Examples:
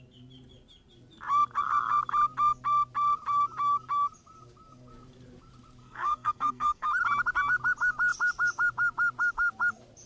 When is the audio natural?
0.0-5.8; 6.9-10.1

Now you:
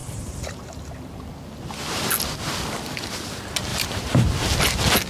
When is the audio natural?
0.9-3.7; 4.3-5.1